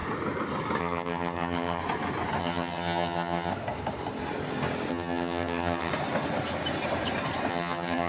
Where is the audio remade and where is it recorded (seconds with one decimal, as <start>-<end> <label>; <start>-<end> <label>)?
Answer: 0.0-0.8 recorded; 0.8-1.8 remade; 1.8-2.4 recorded; 2.4-3.5 remade; 3.5-4.9 recorded; 4.9-5.9 remade; 5.9-7.5 recorded; 7.5-8.1 remade